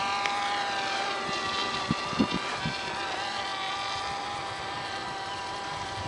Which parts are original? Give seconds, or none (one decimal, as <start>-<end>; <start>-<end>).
0.0-6.1